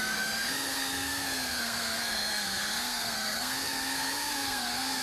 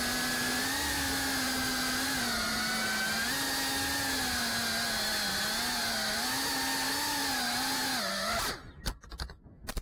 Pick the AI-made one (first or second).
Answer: first